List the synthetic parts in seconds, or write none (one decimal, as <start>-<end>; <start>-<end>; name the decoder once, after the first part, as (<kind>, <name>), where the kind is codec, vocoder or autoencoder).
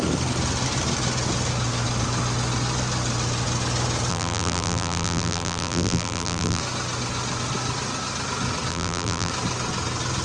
4.1-6.6 (vocoder, BigVGAN v2); 8.7-9.3